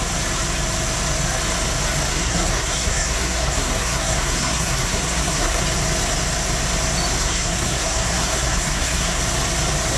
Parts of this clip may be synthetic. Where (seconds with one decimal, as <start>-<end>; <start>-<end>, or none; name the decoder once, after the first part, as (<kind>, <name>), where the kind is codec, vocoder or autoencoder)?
2.1-5.6 (codec, SNAC); 7.2-9.2